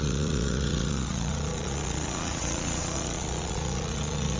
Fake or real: fake